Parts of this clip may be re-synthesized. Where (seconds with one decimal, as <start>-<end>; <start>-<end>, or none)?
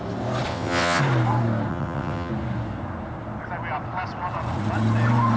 0.5-1.0; 1.7-2.3